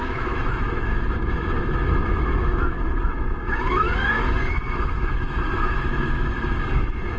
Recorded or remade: remade